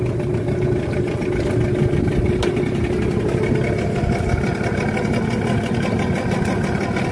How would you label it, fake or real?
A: real